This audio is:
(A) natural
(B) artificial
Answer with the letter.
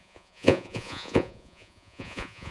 B